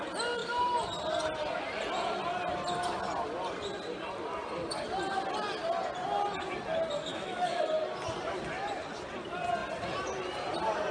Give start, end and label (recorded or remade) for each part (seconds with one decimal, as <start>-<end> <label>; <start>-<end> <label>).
0.0-7.1 recorded; 7.1-7.7 remade; 7.7-10.9 recorded